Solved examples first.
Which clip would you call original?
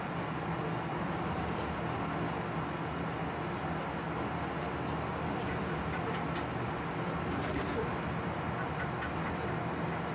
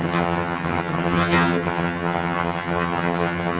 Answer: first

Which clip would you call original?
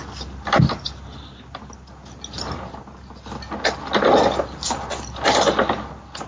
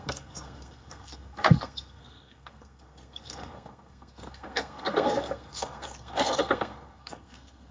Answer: first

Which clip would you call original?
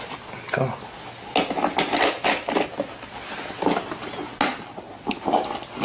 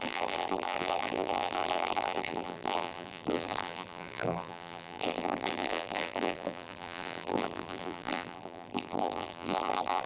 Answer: first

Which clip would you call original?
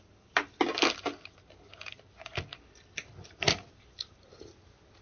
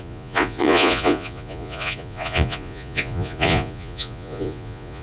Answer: first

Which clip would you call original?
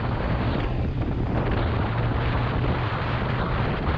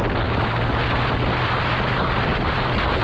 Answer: second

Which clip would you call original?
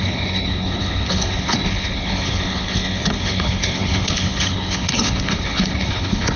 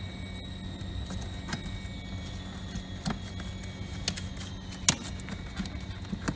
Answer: second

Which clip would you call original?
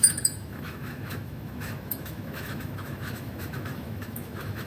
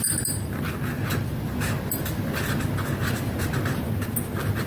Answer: second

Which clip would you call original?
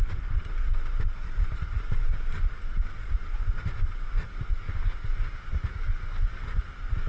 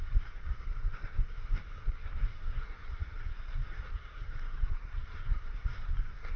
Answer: first